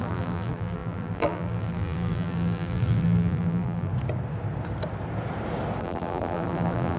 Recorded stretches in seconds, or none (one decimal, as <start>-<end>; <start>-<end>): 3.9-5.8